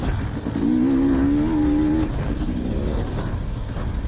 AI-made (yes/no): no